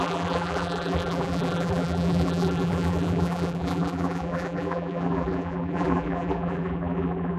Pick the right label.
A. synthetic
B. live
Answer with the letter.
A